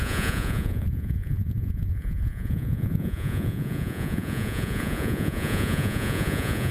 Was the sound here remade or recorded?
remade